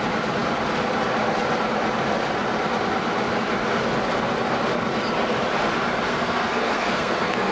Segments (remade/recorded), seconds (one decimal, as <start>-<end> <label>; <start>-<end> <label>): 0.0-6.1 recorded; 6.1-7.5 remade